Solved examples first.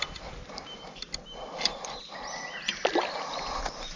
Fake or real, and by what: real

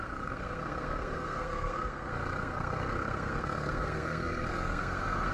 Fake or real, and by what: fake, codec, SNAC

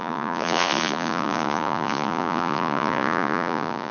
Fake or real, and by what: fake, vocoder, Vocos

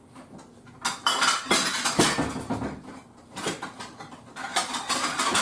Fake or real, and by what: real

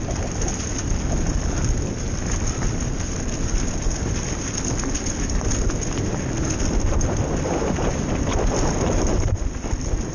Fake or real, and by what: real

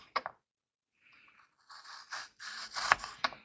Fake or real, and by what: fake, vocoder, BigVGAN v2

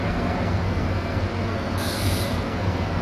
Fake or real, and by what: fake, codec, SNAC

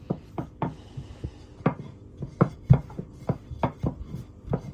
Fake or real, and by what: real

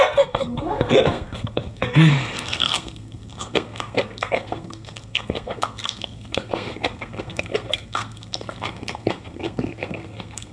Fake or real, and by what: fake, codec, SNAC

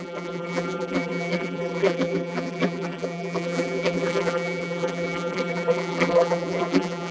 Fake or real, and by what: fake, vocoder, BigVGAN v2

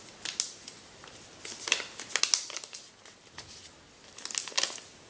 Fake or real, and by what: real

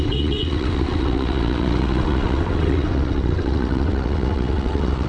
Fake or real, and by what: fake, vocoder, WaveNeXt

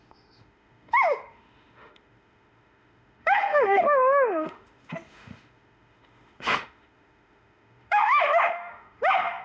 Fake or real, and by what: fake, autoencoder, DAC-VAE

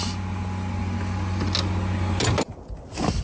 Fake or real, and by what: real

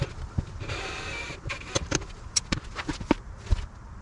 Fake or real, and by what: real